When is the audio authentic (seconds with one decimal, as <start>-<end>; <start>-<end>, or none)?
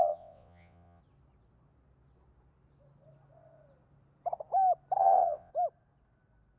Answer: 1.0-5.0; 5.5-6.6